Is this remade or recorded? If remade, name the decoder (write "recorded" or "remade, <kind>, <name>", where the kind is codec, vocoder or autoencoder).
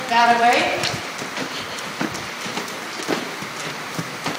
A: remade, vocoder, BigVGAN v2